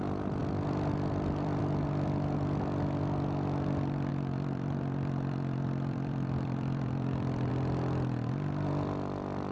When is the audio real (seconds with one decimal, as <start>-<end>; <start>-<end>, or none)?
0.0-0.4; 1.6-4.1; 7.5-9.5